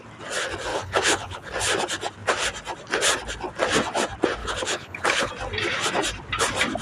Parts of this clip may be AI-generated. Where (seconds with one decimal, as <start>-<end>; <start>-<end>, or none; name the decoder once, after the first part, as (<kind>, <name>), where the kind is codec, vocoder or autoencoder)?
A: 0.7-1.5 (codec, HILCodec); 4.4-5.3